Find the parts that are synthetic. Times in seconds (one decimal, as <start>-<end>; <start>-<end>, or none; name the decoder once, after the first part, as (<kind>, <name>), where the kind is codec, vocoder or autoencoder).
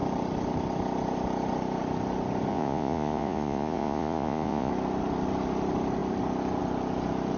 2.5-4.7 (vocoder, Vocos)